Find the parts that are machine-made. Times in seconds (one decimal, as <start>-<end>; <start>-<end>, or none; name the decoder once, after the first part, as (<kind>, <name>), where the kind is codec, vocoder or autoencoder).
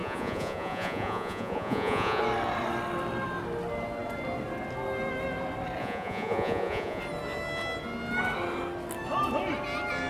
0.0-2.2 (vocoder, Vocos); 5.8-7.0